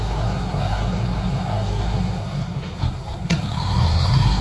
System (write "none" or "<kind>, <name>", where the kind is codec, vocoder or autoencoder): codec, SNAC